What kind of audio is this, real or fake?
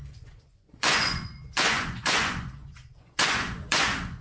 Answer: fake